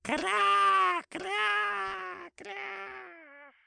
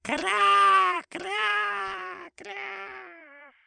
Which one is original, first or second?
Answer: first